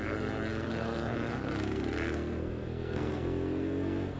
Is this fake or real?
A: fake